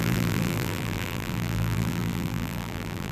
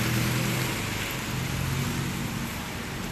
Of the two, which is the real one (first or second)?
second